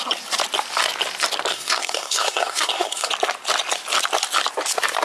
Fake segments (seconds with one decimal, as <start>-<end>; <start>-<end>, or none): 1.5-3.1

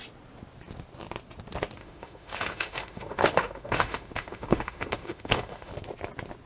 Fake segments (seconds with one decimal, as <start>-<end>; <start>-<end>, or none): 1.8-5.7